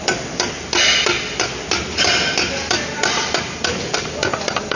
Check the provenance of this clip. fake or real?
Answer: real